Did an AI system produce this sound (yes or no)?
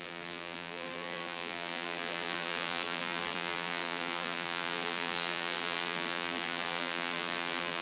yes